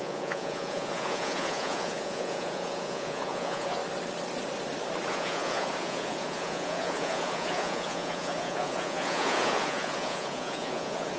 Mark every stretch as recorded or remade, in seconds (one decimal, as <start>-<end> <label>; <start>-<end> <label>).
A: 0.0-3.8 remade; 3.8-5.1 recorded; 5.1-11.2 remade